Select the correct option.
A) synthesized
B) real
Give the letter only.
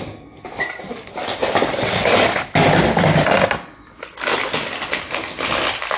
B